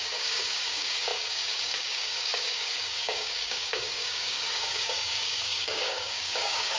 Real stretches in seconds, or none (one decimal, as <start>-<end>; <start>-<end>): none